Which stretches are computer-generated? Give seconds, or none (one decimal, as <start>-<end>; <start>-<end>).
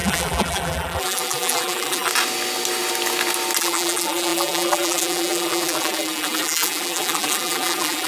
0.0-2.1; 3.6-8.1